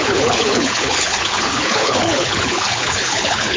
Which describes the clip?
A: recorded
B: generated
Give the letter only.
B